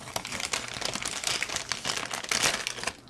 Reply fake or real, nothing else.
real